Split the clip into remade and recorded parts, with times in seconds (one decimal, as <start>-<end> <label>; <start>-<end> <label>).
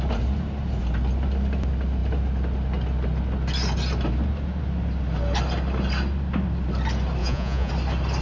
0.0-7.2 recorded; 7.2-7.7 remade; 7.7-8.2 recorded